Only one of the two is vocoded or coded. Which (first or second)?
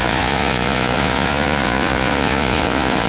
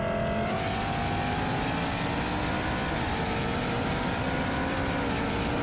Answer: first